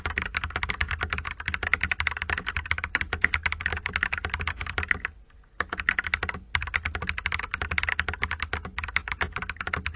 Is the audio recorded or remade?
recorded